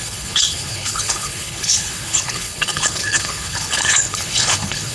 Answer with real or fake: fake